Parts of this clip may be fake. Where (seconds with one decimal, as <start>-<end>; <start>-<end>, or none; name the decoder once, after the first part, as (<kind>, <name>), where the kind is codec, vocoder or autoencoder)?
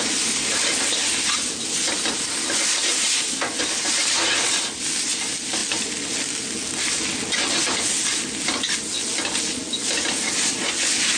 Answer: none